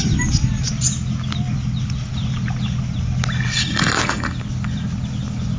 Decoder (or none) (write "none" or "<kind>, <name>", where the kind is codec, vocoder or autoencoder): none